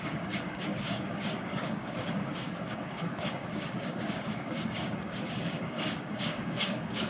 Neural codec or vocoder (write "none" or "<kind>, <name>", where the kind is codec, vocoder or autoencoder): codec, DAC